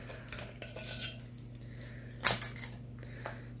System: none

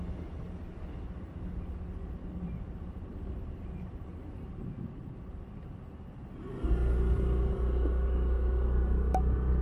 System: none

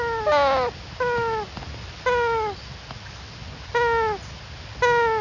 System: none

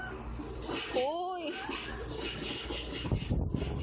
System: none